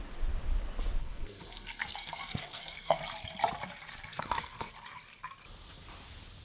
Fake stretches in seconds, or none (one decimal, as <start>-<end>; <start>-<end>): 1.0-3.0; 4.1-4.7